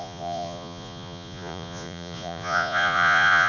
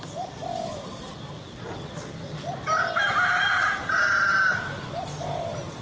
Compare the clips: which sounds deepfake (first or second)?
first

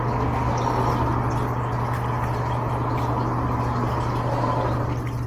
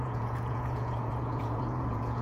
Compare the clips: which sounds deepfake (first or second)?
second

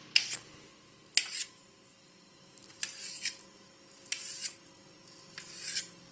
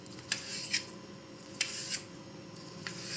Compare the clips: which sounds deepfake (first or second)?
second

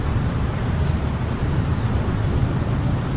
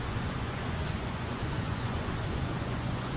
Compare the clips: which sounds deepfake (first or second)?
second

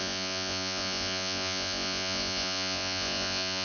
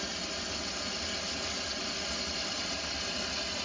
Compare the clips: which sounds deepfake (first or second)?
first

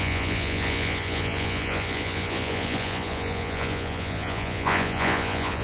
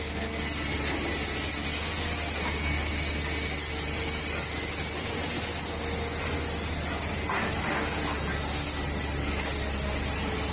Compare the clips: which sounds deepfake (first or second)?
first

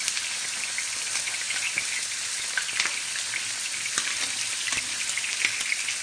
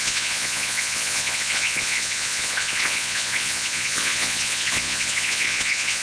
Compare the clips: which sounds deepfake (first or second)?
second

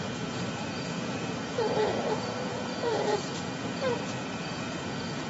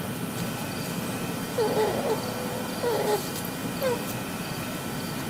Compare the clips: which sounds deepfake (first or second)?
first